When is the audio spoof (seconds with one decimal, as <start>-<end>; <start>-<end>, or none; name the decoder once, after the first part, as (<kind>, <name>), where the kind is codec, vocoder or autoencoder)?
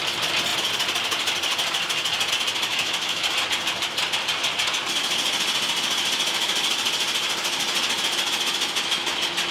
2.7-3.3 (autoencoder, DAC-VAE)